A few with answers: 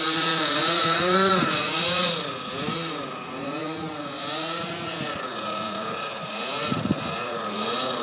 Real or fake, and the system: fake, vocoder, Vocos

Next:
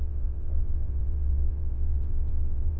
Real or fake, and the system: fake, vocoder, WaveNeXt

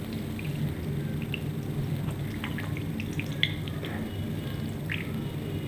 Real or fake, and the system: real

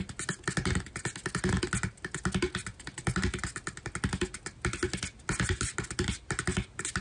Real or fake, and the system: real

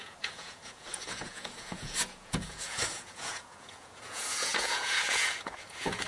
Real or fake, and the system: fake, vocoder, Vocos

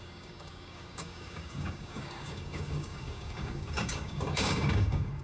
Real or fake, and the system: fake, codec, DAC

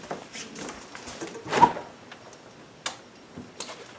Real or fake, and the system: real